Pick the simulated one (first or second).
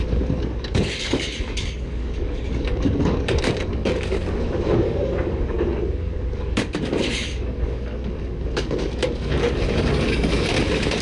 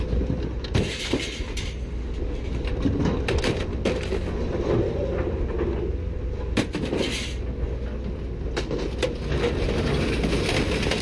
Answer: first